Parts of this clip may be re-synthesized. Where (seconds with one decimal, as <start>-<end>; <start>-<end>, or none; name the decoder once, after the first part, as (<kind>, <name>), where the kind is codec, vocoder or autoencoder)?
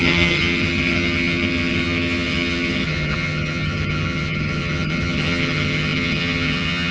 0.0-6.9 (vocoder, HiFi-GAN)